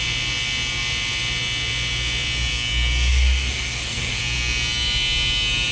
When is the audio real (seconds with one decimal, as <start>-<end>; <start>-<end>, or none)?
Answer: 0.0-3.1; 4.2-5.7